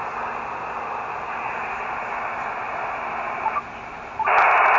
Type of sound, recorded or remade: recorded